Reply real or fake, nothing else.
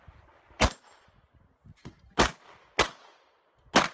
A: real